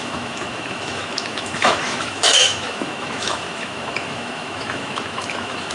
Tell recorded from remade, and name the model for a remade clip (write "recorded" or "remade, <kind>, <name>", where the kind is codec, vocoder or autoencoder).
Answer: remade, autoencoder, DAC-VAE